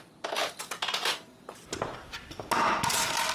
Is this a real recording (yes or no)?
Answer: yes